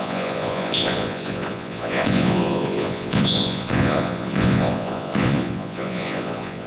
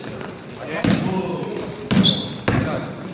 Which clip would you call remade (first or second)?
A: first